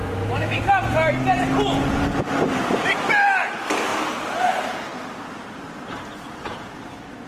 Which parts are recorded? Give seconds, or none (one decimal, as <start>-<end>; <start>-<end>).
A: 0.6-7.3